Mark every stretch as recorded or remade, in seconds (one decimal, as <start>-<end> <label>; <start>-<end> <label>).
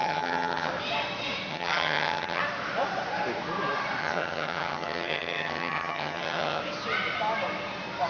0.0-0.7 remade; 0.7-1.5 recorded; 1.5-2.4 remade; 2.4-4.0 recorded; 4.0-6.6 remade; 6.6-8.1 recorded